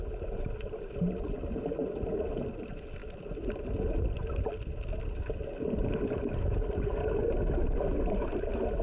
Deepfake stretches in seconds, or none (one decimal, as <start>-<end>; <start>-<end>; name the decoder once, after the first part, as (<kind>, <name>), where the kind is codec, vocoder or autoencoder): none